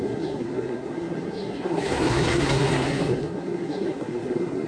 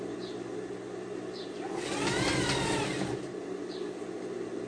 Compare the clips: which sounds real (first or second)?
second